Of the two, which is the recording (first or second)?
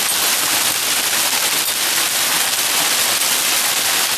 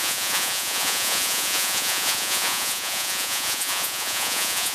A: first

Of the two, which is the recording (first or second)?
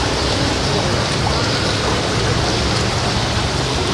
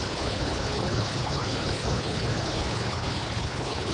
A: first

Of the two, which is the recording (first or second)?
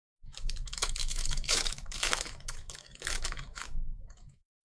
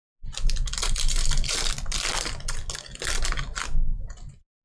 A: second